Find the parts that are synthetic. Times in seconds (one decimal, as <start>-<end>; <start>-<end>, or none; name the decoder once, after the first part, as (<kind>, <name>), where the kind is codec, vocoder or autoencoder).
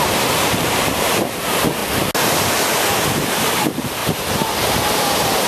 0.0-1.8 (vocoder, BigVGAN v2); 3.2-4.0; 4.9-5.5